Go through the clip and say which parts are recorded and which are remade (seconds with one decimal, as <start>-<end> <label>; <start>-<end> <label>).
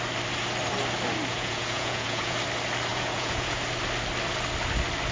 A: 0.0-1.3 recorded; 1.3-2.4 remade; 2.4-2.9 recorded; 2.9-3.6 remade; 3.6-5.1 recorded